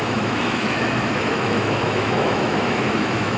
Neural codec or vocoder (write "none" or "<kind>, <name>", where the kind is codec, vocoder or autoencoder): autoencoder, DAC-VAE